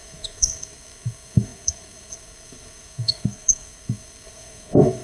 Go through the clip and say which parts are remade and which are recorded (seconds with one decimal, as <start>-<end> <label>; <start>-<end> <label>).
0.0-5.0 remade